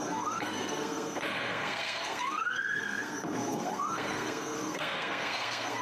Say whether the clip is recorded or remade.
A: remade